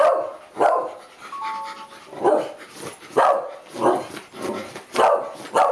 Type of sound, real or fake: real